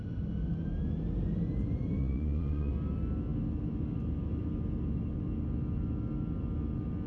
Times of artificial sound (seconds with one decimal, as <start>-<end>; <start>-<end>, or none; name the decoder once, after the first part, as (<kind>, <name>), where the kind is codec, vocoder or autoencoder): 2.0-2.7 (vocoder, Vocos)